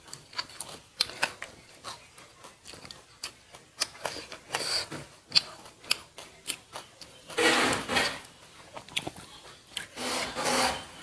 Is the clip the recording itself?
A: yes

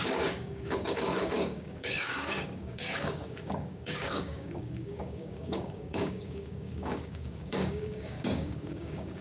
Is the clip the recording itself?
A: no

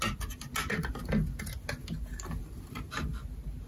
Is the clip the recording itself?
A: yes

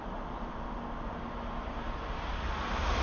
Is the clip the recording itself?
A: yes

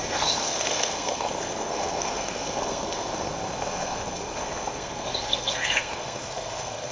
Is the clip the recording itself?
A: no